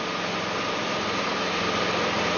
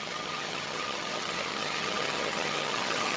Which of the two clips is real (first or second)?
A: first